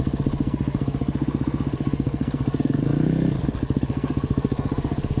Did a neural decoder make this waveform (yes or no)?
yes